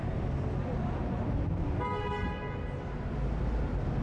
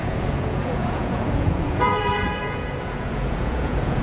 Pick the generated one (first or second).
second